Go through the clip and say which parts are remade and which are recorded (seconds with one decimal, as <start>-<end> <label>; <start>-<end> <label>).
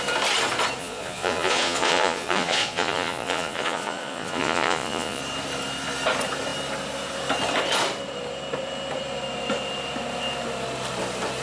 0.0-0.8 recorded; 0.8-5.2 remade; 5.2-11.4 recorded